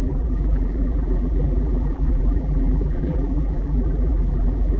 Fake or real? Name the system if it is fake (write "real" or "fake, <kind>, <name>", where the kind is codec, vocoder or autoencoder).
fake, vocoder, BigVGAN v2